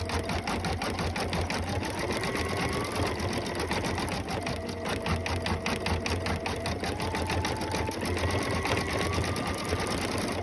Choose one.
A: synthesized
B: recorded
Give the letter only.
B